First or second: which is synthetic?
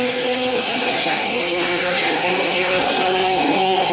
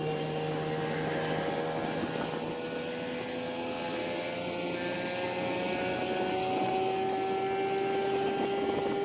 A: first